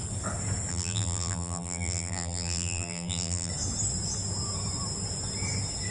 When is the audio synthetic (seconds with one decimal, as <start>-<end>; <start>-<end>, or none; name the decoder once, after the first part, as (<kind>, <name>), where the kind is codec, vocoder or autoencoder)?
0.7-3.5 (vocoder, BigVGAN v2)